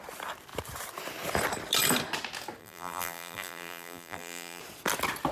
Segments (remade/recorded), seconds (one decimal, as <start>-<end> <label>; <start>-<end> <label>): 0.0-2.6 recorded; 2.6-4.6 remade; 4.6-5.3 recorded